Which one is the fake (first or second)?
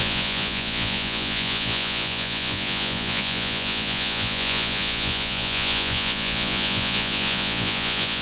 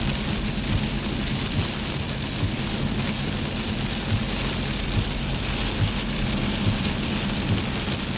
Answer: first